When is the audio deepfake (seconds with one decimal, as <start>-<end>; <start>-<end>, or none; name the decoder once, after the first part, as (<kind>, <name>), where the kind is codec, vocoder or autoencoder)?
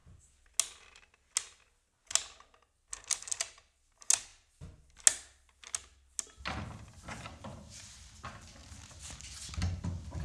none